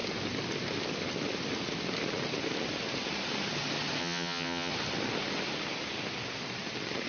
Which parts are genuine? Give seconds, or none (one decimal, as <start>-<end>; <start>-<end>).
0.0-4.0; 4.7-7.1